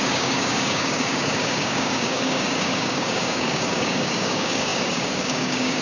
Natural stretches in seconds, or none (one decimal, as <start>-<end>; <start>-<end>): none